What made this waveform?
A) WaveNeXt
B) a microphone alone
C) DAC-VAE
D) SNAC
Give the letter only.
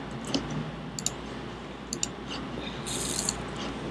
B